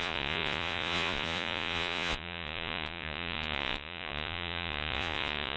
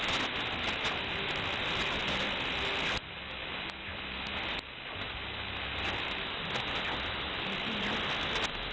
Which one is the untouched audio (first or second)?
second